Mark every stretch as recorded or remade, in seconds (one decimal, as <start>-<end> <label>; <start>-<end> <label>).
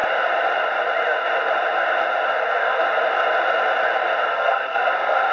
0.0-2.4 recorded; 2.4-2.8 remade; 2.8-4.3 recorded; 4.3-5.3 remade